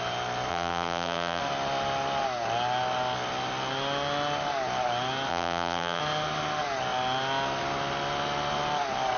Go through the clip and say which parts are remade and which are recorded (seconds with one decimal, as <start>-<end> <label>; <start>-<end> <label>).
0.0-0.5 recorded; 0.5-1.4 remade; 1.4-5.3 recorded; 5.3-6.0 remade; 6.0-9.2 recorded